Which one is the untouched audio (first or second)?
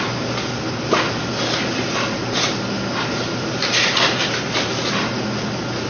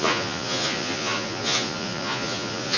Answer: first